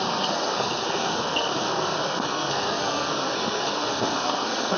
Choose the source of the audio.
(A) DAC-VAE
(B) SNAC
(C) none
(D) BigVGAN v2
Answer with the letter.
B